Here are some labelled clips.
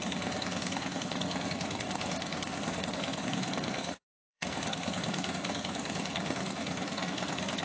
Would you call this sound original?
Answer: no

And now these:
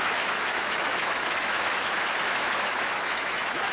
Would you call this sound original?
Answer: no